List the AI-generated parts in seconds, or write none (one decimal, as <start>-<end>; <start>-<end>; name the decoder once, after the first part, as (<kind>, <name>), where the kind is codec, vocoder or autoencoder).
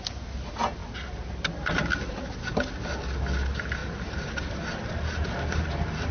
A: none